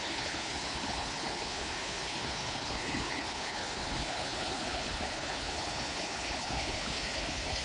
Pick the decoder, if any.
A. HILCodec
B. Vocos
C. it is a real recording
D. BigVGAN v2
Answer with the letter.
A